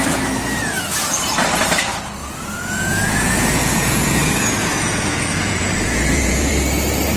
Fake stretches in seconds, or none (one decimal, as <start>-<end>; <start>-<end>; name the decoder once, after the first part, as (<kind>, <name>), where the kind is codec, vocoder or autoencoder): 2.2-6.5 (vocoder, Vocos)